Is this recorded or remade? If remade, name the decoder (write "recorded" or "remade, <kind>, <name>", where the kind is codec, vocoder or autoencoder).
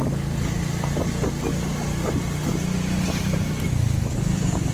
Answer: recorded